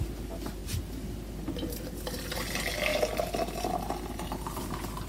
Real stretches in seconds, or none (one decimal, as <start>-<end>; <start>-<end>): 0.0-5.1